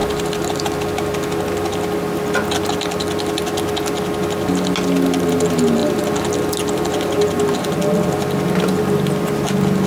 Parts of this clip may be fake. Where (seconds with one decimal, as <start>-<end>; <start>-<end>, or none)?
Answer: 0.0-1.2

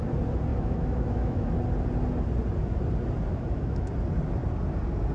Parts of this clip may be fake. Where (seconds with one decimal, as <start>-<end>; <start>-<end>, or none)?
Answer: 0.5-1.5; 3.3-3.9

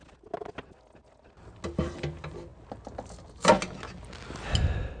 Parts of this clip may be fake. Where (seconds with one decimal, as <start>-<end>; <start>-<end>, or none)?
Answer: none

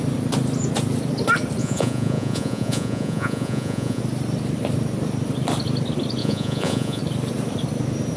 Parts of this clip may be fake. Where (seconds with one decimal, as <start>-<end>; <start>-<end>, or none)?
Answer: 1.6-4.0; 6.2-7.0

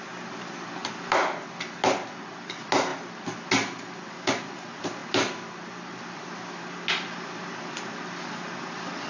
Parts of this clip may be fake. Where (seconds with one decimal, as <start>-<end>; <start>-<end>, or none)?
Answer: none

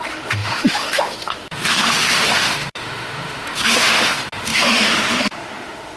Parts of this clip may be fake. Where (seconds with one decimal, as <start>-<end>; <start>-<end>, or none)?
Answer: 0.0-6.0